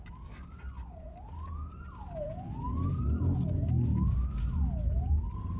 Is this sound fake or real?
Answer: real